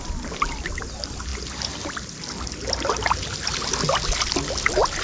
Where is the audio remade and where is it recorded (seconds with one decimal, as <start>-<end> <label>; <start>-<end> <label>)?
0.0-5.0 recorded